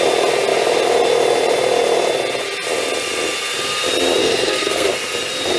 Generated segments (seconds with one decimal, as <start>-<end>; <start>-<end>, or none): 4.2-4.9